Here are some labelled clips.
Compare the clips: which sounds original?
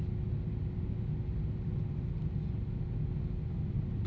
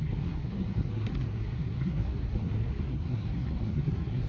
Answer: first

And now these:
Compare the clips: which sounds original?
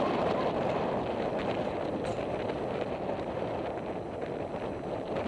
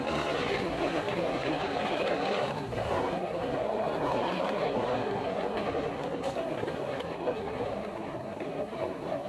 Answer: first